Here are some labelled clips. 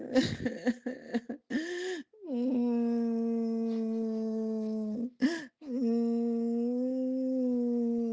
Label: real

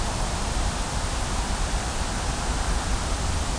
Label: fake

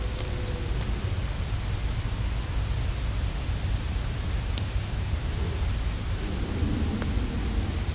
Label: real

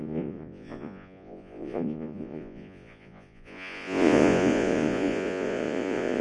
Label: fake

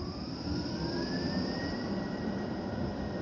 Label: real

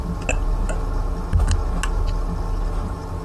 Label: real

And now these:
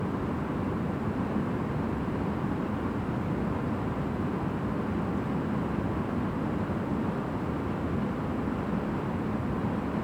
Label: real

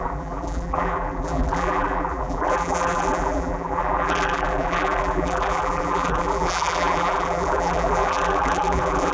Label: fake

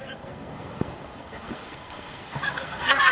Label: fake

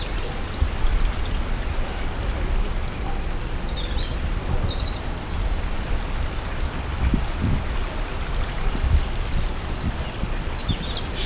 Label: real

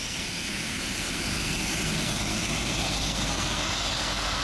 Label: fake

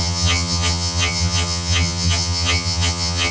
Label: fake